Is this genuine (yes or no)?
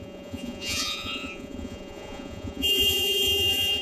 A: no